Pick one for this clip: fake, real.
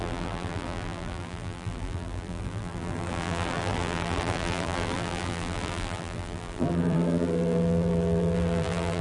fake